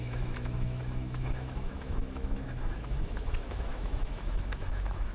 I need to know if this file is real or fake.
fake